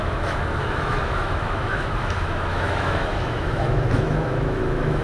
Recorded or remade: remade